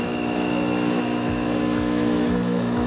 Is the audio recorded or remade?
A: remade